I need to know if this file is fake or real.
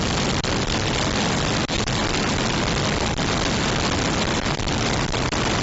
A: real